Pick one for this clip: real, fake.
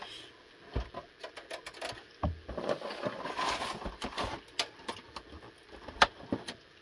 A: real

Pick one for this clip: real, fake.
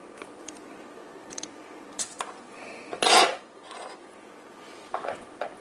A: fake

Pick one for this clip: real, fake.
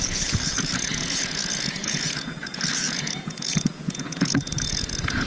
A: fake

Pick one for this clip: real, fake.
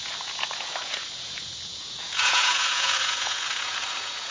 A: fake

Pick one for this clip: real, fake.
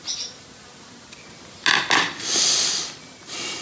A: real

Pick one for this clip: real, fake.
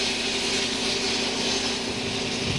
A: real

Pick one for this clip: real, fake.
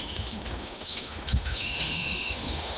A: fake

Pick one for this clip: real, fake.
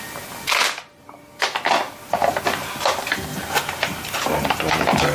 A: real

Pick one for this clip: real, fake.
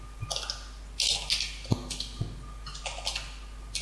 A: real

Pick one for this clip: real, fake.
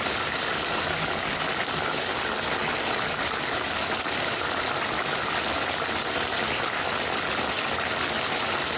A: real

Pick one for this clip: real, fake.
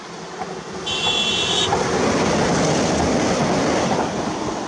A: real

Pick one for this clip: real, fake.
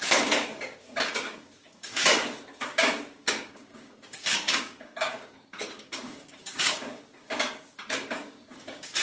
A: fake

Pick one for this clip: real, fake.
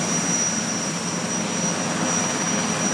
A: real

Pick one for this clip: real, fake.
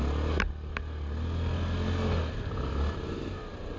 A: real